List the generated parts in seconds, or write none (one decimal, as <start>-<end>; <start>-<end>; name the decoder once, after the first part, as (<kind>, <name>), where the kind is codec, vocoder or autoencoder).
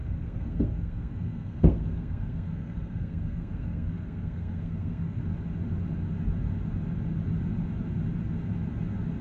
0.0-5.2 (codec, SNAC)